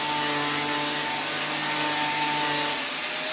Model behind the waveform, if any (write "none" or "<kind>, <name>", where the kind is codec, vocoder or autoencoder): none